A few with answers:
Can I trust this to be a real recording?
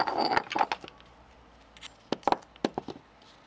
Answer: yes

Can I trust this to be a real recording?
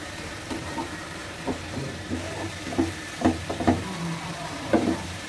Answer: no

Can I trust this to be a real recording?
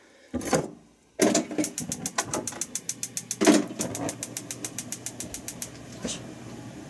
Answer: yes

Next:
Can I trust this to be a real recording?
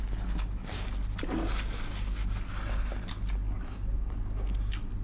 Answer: yes